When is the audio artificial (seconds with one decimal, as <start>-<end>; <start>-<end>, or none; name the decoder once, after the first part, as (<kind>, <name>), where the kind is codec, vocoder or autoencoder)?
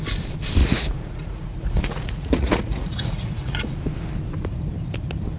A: 0.6-3.8 (vocoder, Vocos)